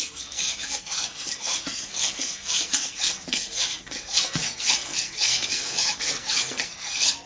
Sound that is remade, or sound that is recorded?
remade